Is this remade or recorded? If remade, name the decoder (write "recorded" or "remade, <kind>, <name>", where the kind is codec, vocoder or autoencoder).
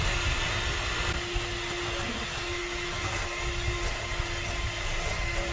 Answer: recorded